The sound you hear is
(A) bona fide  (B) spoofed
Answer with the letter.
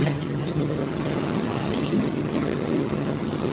B